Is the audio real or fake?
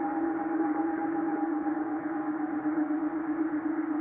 fake